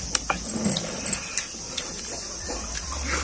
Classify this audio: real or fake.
real